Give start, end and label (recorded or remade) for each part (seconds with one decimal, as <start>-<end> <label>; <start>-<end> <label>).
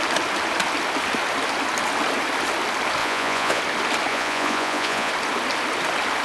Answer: 0.0-3.0 recorded; 3.0-3.6 remade; 3.6-4.1 recorded; 4.1-5.1 remade; 5.1-6.2 recorded